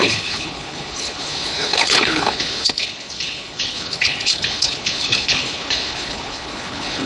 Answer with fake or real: fake